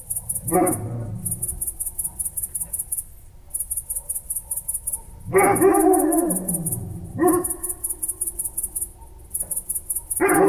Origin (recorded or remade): recorded